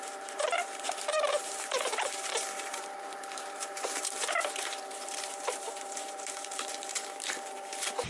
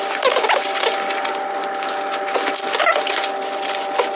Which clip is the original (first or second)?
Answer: second